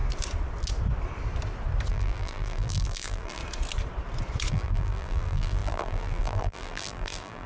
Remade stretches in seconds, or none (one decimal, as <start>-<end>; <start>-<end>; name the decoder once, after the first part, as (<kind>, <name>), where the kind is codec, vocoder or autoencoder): 1.9-3.4 (vocoder, BigVGAN v2); 4.5-7.5